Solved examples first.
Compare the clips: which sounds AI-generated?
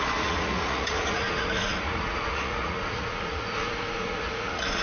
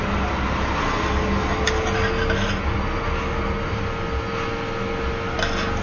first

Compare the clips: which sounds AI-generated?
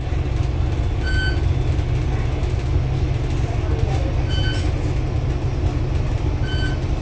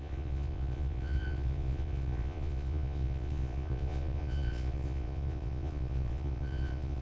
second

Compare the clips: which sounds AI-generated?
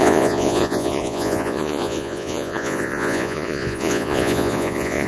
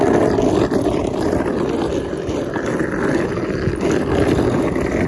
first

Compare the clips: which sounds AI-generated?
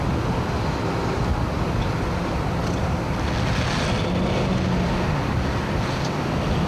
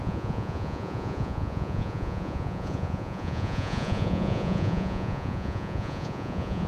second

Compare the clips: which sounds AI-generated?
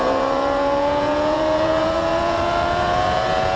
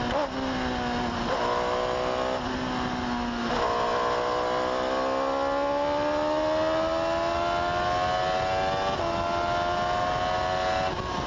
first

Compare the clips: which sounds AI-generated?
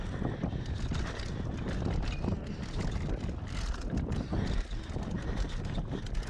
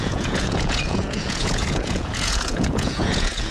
second